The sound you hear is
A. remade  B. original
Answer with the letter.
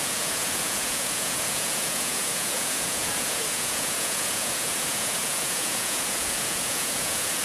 A